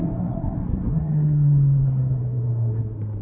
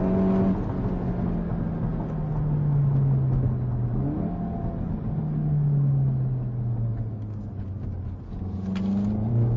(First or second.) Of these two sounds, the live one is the second